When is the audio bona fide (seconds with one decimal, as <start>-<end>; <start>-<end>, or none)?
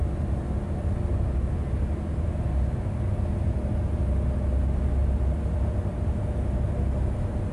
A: 0.0-5.0; 6.1-7.5